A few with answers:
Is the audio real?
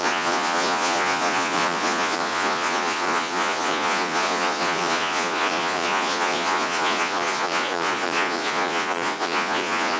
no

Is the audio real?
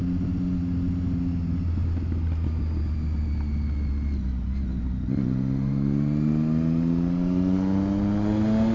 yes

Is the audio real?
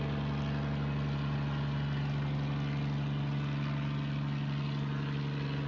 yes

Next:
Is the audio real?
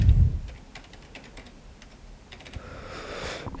yes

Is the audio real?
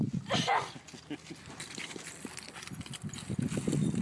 yes